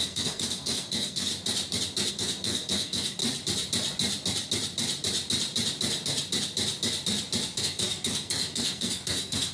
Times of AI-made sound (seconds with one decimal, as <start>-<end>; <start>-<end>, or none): 0.0-1.3; 2.1-3.2; 7.6-9.5